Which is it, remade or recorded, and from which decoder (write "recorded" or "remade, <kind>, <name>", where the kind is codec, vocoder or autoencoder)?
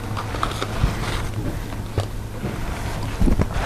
recorded